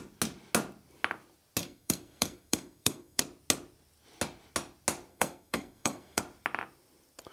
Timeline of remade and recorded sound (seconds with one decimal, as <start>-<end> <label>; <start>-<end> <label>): 0.0-1.6 recorded; 1.6-3.2 remade; 3.2-5.1 recorded; 5.1-6.2 remade; 6.2-7.3 recorded